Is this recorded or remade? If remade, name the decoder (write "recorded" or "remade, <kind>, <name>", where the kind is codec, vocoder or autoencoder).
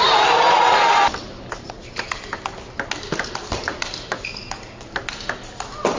recorded